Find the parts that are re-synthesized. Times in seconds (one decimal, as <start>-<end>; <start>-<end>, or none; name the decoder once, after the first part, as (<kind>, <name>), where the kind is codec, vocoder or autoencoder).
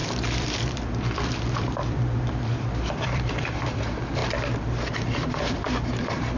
0.0-4.2 (vocoder, BigVGAN v2); 4.9-6.4